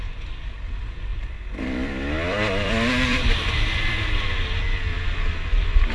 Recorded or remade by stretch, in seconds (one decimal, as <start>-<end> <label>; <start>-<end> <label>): 0.0-1.1 recorded; 1.1-4.6 remade; 4.6-5.9 recorded